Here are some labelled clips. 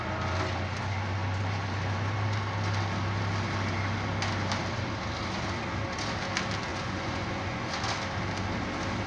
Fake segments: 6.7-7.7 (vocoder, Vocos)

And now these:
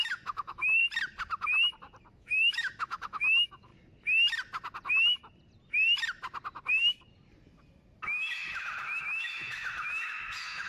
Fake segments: 0.0-0.8 (autoencoder, DAC-VAE); 2.1-3.7; 8.0-10.7